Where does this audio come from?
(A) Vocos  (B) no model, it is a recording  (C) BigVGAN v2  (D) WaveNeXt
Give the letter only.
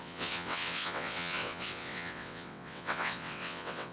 D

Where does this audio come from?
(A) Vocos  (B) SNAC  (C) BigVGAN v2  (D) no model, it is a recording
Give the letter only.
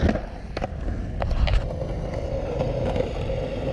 D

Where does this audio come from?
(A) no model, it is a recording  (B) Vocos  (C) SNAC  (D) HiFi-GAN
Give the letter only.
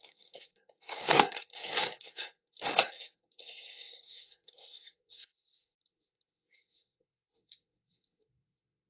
C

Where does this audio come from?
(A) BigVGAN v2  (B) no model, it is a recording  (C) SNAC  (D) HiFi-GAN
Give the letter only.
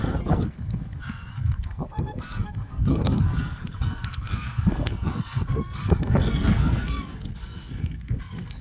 C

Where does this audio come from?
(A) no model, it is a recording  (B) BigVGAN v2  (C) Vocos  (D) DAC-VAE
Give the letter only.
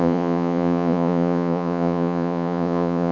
C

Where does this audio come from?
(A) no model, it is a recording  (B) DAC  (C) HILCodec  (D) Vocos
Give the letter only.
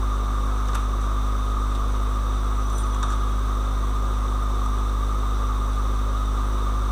A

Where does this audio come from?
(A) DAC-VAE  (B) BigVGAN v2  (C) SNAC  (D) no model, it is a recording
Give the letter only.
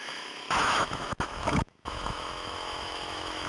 A